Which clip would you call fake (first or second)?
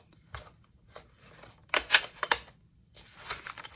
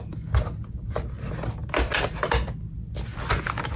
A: first